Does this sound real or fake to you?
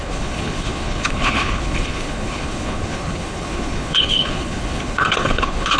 fake